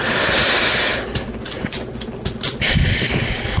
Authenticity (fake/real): real